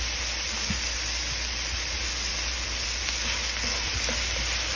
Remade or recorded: recorded